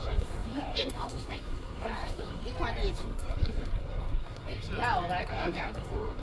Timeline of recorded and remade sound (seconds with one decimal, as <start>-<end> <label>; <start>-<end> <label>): 0.0-2.4 remade; 2.4-2.9 recorded; 2.9-4.7 remade; 4.7-5.2 recorded; 5.2-6.2 remade